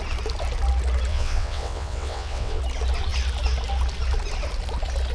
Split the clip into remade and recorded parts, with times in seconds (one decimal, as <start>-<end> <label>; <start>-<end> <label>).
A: 0.0-1.1 recorded; 1.1-2.6 remade; 2.6-5.1 recorded